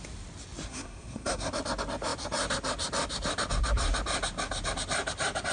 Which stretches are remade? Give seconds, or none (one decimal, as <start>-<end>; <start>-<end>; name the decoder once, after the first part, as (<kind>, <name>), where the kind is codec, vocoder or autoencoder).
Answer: 0.7-1.5 (codec, SNAC)